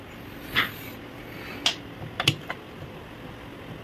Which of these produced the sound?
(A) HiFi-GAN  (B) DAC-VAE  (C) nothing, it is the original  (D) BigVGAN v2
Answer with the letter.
C